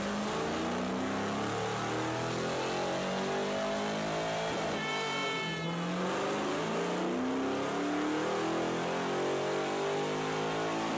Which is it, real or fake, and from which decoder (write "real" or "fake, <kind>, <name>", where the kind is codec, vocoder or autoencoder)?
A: real